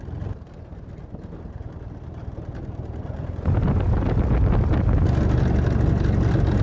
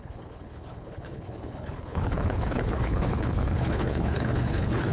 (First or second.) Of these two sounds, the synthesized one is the second